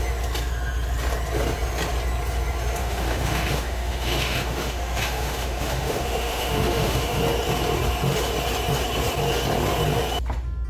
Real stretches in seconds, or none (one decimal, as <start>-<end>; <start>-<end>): 0.0-2.8; 7.2-10.7